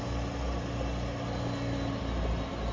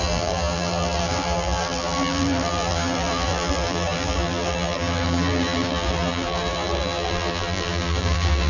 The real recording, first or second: first